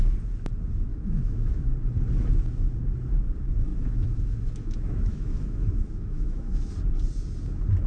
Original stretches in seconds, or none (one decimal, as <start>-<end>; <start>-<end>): 0.0-0.9; 1.7-3.7; 6.7-7.9